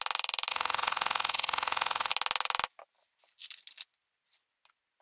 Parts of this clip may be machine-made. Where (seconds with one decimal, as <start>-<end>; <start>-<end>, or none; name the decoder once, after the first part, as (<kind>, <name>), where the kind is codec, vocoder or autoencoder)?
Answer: 0.5-2.1 (vocoder, WaveNeXt)